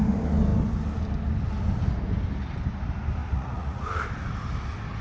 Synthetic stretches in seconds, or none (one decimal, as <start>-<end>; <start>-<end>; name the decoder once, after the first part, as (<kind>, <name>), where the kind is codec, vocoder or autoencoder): 3.2-3.8 (vocoder, Vocos)

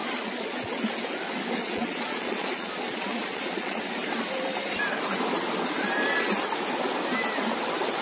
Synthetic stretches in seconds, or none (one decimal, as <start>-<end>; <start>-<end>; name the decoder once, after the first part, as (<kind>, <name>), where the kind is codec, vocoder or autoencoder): 0.0-0.8 (vocoder, Vocos); 1.6-3.8

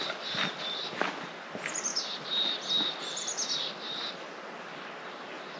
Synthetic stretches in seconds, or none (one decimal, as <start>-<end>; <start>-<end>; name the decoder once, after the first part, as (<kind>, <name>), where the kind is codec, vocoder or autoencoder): none

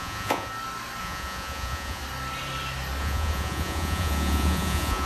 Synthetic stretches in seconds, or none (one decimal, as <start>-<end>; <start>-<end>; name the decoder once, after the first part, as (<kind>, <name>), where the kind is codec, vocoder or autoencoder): 0.0-0.5 (vocoder, Vocos); 1.0-2.0; 3.0-5.1

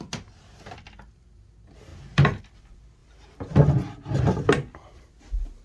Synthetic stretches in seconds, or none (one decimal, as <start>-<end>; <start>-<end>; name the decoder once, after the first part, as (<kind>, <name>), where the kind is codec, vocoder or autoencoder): none